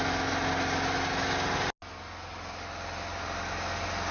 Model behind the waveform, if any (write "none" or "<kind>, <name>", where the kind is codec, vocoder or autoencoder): none